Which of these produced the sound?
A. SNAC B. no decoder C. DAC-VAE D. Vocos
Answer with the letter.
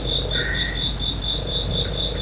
B